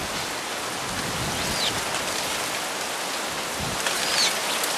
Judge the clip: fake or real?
real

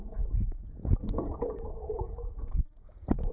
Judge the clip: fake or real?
fake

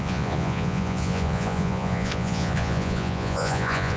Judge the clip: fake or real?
fake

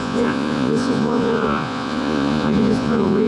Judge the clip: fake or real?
fake